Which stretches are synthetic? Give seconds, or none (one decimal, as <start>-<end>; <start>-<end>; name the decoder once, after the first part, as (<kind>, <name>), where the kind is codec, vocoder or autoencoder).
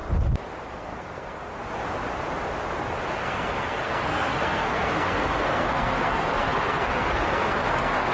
0.7-1.5 (codec, SNAC); 3.1-8.1